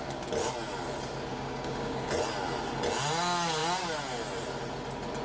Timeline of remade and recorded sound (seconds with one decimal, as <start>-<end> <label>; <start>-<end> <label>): 0.0-1.3 recorded; 1.3-2.1 remade; 2.1-5.2 recorded